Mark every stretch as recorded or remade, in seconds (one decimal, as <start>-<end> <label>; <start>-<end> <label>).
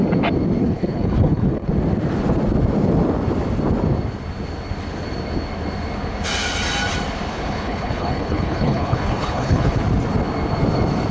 0.0-0.6 recorded; 0.6-1.7 remade; 1.7-7.3 recorded; 7.3-9.8 remade; 9.8-11.1 recorded